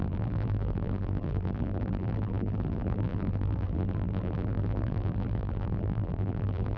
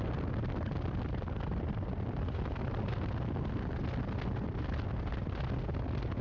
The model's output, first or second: first